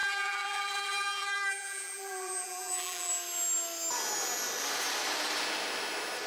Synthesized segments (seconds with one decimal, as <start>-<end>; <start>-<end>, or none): 0.0-3.1